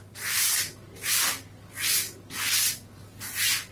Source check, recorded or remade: recorded